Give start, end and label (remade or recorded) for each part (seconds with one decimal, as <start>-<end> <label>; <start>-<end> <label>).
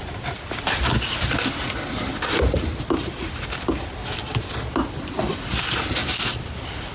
0.0-0.8 remade; 0.8-6.9 recorded